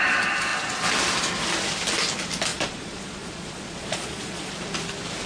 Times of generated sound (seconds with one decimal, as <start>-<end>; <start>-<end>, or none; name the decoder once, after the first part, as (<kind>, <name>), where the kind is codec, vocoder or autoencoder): 2.5-4.5 (vocoder, Vocos)